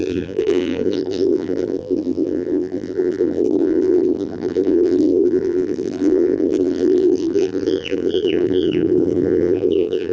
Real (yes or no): no